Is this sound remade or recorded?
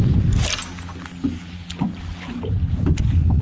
recorded